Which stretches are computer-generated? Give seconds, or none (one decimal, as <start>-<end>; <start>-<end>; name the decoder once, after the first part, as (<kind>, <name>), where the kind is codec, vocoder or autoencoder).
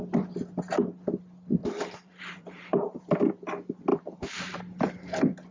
1.6-3.0 (vocoder, BigVGAN v2); 3.9-4.6